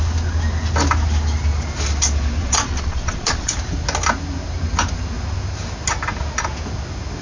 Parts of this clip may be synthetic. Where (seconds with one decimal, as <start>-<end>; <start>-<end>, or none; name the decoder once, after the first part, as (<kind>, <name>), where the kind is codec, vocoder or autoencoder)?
2.4-3.5 (vocoder, Vocos)